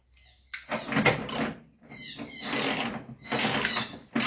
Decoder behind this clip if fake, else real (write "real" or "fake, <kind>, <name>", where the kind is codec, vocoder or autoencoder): real